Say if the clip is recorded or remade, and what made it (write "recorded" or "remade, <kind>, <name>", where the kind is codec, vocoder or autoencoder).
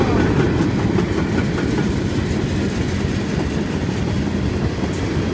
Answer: recorded